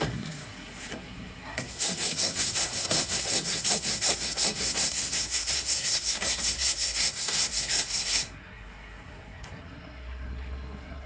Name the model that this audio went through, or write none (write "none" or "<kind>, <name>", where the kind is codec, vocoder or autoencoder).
codec, SNAC